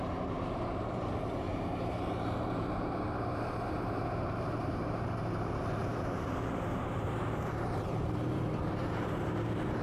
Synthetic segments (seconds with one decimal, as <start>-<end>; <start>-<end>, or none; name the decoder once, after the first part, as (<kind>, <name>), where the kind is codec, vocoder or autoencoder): 0.0-9.8 (vocoder, BigVGAN v2)